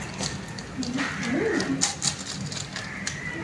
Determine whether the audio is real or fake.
real